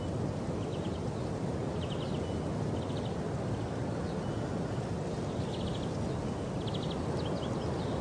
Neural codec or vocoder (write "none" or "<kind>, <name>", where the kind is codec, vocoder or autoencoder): none